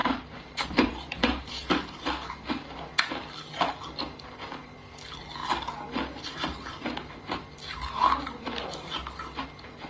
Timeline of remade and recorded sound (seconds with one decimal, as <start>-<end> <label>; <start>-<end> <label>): 0.0-1.7 remade; 1.7-9.9 recorded